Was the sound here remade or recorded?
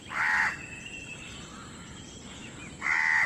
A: recorded